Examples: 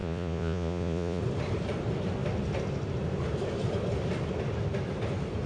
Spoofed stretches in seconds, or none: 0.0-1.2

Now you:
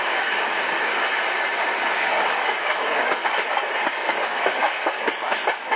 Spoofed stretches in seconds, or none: 0.0-0.9; 1.9-3.2; 3.9-5.8

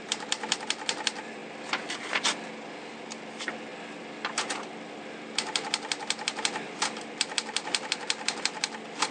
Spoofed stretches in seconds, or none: none

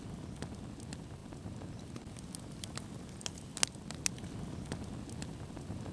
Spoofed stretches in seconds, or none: none

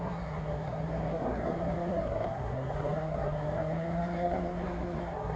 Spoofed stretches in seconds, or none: 0.0-5.4

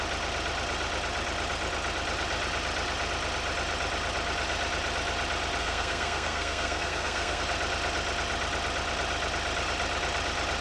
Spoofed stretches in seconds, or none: 5.6-7.4

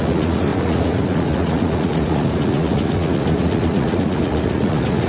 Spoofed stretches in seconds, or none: 0.0-5.1